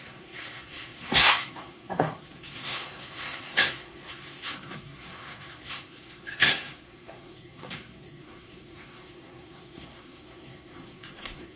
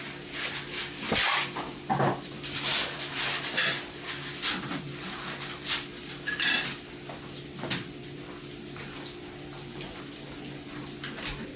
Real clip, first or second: second